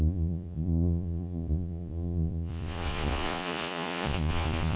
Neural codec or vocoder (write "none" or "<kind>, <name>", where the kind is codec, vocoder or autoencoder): vocoder, Vocos